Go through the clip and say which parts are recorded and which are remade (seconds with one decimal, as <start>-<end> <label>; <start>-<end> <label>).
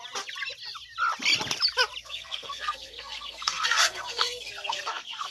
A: 0.0-2.0 recorded; 2.0-5.3 remade